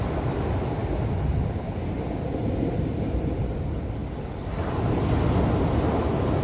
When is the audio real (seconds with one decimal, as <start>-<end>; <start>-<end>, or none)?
0.0-6.4